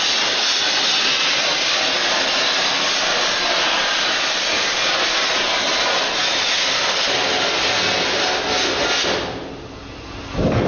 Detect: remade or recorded recorded